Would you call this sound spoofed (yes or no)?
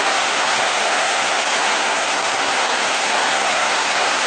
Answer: yes